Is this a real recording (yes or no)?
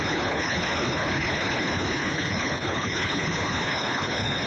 no